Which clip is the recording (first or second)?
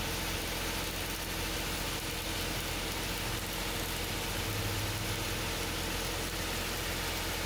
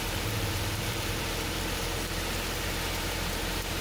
first